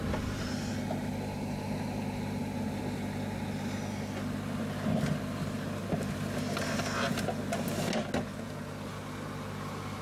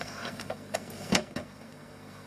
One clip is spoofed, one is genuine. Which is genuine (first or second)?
first